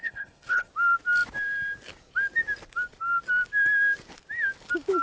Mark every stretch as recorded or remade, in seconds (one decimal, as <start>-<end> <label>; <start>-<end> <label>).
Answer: 0.0-0.7 remade; 0.7-5.0 recorded